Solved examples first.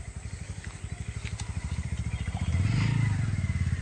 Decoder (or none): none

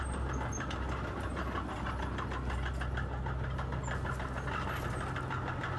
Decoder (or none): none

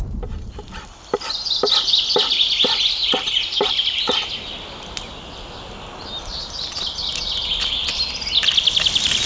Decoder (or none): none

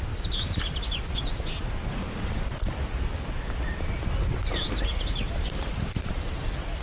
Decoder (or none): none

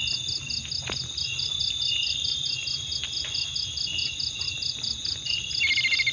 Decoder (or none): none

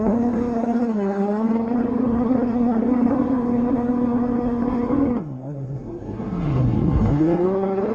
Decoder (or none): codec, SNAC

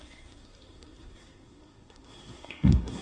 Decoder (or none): codec, SNAC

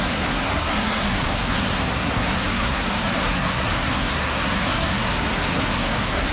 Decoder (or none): codec, SNAC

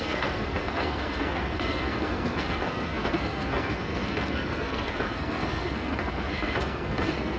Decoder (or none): codec, SNAC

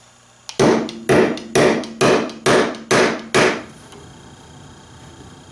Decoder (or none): none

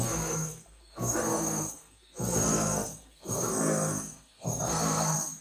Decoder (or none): codec, SNAC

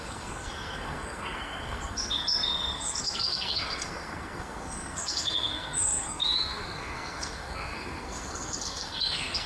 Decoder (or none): codec, SNAC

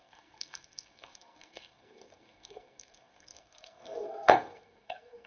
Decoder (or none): codec, SNAC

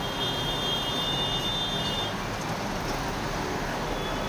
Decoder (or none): none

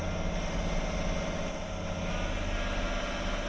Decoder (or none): none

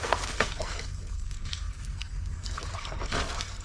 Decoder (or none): codec, SNAC